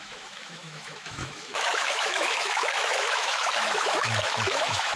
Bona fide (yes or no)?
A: no